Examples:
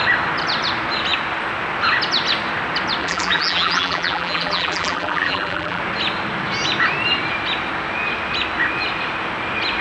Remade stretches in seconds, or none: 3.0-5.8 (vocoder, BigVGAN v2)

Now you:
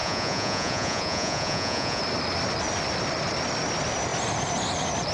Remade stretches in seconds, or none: 0.0-2.0 (vocoder, Vocos)

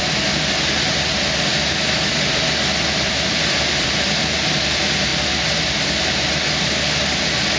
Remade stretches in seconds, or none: none